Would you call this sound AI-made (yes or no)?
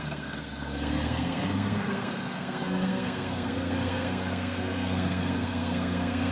yes